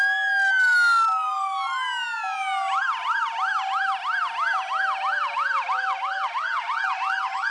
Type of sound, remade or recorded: recorded